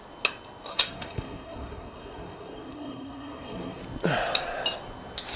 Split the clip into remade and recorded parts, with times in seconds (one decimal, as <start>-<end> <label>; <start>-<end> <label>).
0.0-0.7 recorded; 0.7-3.8 remade; 3.8-5.4 recorded